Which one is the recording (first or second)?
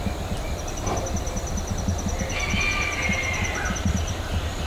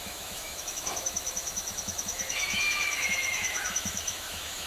first